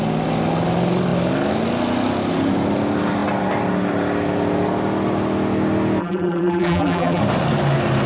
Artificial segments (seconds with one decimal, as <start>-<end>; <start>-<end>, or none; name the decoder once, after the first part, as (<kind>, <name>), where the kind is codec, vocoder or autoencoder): 6.0-7.2 (vocoder, BigVGAN v2)